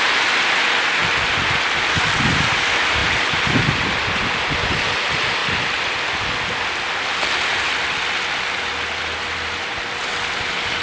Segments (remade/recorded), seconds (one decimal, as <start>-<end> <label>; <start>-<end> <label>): 0.0-10.8 recorded